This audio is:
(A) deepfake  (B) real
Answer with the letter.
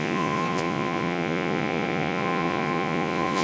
A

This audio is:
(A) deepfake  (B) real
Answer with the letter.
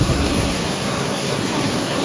A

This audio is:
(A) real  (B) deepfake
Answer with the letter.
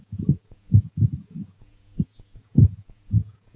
B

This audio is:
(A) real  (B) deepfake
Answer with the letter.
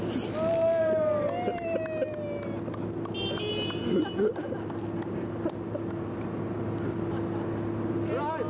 A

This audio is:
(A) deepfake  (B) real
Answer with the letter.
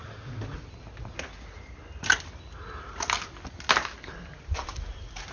B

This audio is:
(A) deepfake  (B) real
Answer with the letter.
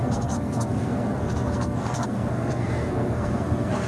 A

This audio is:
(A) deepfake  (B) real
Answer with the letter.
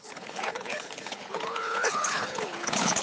A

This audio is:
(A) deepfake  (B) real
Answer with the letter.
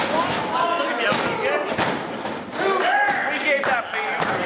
B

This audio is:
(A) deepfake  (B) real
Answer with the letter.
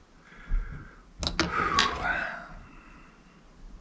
B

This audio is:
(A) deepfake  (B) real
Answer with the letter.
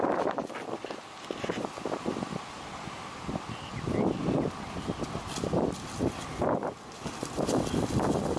B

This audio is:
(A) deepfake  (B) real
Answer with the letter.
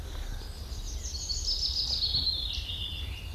B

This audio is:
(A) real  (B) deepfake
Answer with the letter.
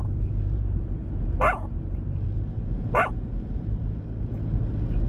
B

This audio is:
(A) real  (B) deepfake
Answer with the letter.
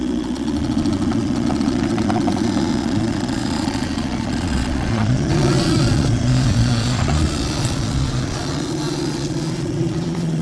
B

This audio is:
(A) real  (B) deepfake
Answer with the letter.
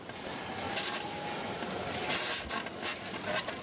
A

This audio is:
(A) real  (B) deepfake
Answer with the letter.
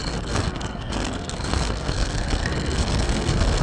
B